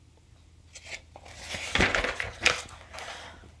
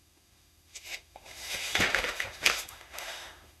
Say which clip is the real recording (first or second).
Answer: first